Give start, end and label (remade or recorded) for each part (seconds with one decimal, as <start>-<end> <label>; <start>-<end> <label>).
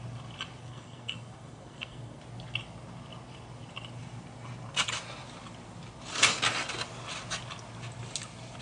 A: 0.0-0.6 recorded; 0.6-2.2 remade; 2.2-8.6 recorded